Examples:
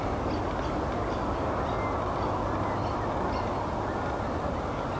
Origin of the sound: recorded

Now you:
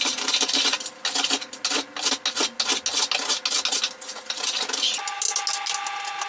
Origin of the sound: recorded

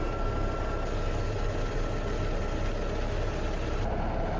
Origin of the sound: recorded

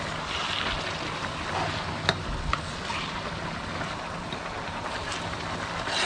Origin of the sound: recorded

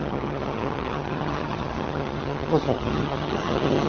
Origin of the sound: remade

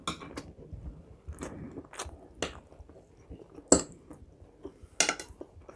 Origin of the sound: recorded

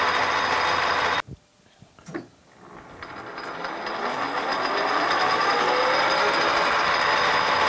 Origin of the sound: recorded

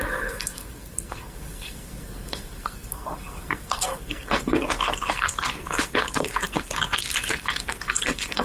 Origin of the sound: remade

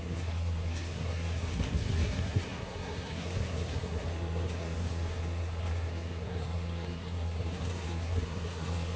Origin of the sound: remade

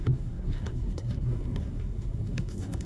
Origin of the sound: remade